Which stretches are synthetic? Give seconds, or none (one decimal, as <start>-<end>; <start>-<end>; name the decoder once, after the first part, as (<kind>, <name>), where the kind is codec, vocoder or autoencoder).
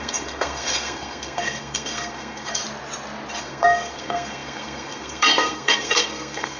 0.0-2.6 (codec, SNAC); 3.4-6.6